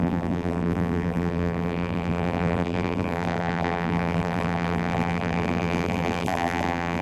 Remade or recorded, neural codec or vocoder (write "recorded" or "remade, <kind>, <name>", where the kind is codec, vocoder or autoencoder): remade, vocoder, BigVGAN v2